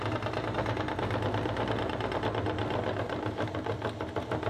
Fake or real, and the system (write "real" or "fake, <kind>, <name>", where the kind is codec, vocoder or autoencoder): real